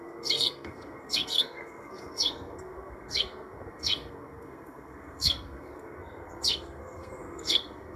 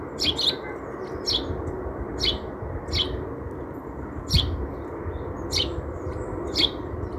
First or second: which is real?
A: second